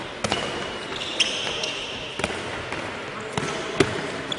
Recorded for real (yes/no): yes